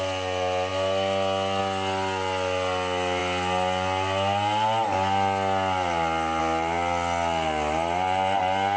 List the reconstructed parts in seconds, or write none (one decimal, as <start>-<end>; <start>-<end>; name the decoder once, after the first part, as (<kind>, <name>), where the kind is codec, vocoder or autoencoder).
none